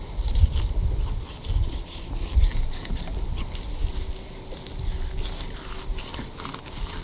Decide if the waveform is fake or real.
real